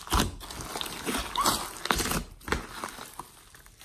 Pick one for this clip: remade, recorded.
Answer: recorded